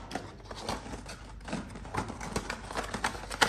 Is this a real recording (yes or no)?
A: yes